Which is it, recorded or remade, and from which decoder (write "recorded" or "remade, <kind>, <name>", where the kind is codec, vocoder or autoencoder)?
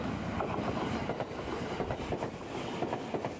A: recorded